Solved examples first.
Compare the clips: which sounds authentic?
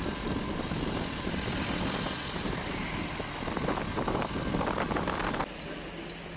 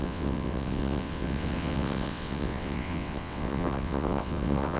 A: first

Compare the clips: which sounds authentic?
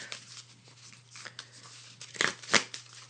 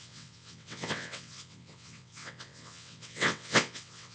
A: first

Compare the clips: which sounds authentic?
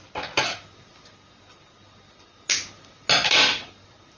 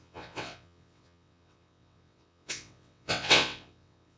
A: first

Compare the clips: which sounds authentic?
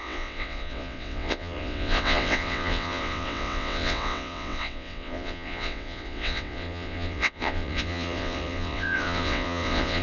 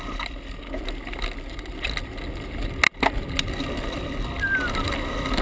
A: second